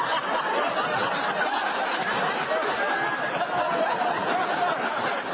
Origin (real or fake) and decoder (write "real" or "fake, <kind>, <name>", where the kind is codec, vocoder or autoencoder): real